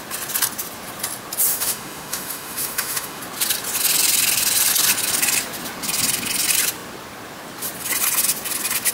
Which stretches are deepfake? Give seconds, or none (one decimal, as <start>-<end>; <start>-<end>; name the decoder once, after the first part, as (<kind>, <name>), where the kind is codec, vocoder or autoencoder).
1.5-3.2 (autoencoder, DAC-VAE)